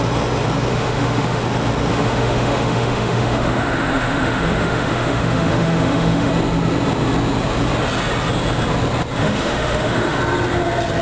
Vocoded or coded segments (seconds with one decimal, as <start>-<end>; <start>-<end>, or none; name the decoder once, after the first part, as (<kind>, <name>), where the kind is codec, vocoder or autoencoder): 0.7-1.4 (autoencoder, DAC-VAE); 1.9-6.3; 9.2-10.2